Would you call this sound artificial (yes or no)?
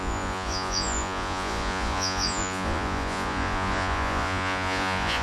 yes